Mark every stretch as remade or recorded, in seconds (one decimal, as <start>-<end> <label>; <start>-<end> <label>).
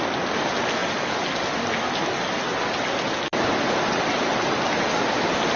0.0-5.6 recorded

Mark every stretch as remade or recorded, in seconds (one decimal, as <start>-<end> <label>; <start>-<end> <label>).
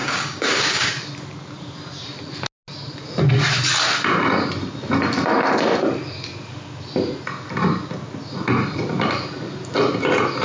0.0-0.9 remade; 0.9-10.4 recorded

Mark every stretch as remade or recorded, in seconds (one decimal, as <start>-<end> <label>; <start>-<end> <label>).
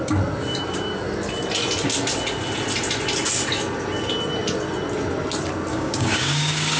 0.0-5.7 recorded; 5.7-6.8 remade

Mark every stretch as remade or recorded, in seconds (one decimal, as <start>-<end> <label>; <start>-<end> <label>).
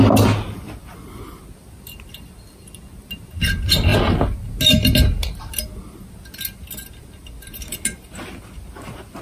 0.0-9.2 recorded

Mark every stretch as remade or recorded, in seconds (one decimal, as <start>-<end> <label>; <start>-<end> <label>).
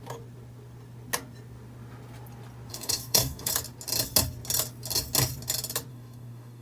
0.0-2.7 recorded; 2.7-3.5 remade; 3.5-5.9 recorded; 5.9-6.6 remade